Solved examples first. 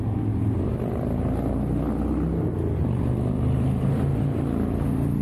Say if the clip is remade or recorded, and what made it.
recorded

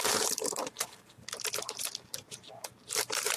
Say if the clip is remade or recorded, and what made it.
remade, vocoder, BigVGAN v2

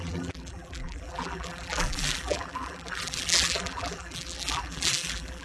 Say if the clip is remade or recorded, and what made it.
remade, vocoder, BigVGAN v2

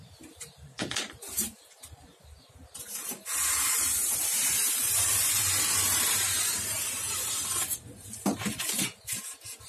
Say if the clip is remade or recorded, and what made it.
remade, vocoder, BigVGAN v2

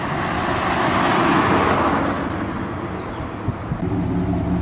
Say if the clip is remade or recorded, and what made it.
recorded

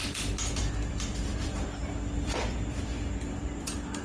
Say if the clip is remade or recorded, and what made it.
remade, vocoder, BigVGAN v2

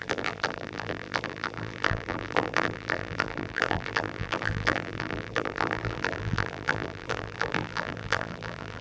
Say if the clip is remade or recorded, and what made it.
remade, vocoder, BigVGAN v2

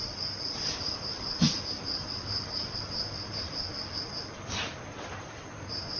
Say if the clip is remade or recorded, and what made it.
remade, vocoder, BigVGAN v2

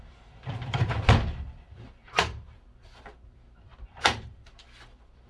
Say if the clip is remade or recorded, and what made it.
remade, vocoder, BigVGAN v2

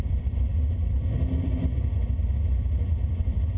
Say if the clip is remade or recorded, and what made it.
remade, vocoder, BigVGAN v2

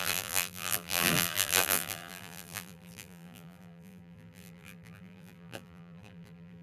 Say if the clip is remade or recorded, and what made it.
remade, vocoder, BigVGAN v2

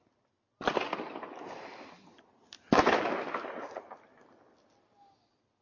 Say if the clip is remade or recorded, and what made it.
recorded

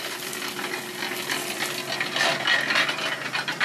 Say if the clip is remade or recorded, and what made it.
recorded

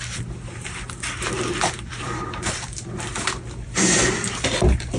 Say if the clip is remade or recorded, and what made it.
recorded